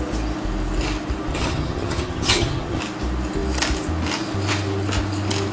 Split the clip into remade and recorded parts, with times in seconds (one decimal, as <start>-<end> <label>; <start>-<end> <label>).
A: 0.0-1.3 recorded; 1.3-2.8 remade; 2.8-5.5 recorded